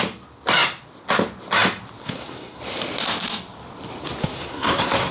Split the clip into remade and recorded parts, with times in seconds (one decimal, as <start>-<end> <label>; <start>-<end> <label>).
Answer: 0.0-2.0 recorded; 2.0-2.6 remade; 2.6-4.2 recorded; 4.2-5.1 remade